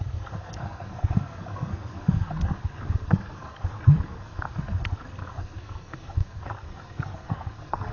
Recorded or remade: remade